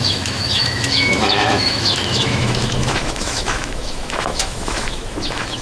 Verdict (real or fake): fake